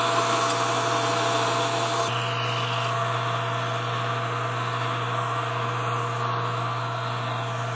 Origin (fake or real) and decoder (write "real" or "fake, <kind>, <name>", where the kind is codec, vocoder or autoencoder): real